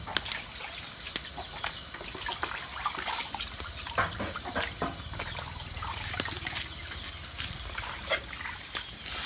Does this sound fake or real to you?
real